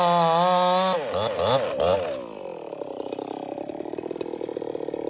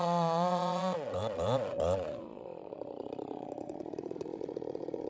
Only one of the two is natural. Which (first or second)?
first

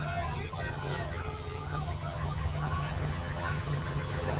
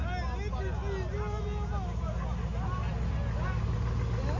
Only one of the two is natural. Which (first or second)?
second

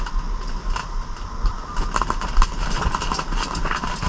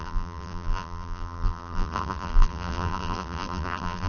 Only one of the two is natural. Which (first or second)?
first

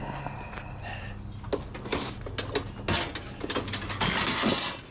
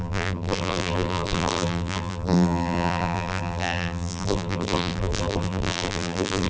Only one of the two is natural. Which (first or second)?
first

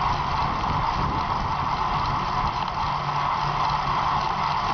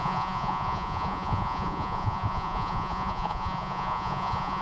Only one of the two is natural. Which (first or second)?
first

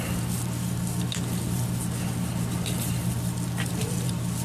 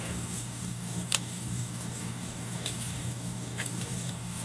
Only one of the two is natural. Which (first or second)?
first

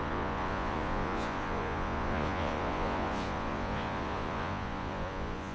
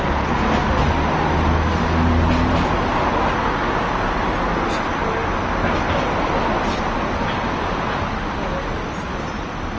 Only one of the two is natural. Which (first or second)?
second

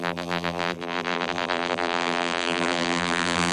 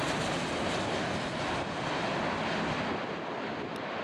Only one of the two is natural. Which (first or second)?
second